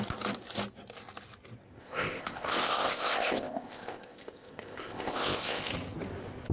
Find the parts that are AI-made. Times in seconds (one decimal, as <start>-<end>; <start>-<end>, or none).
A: 1.8-5.7